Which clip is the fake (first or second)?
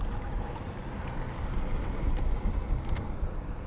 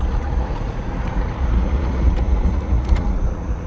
second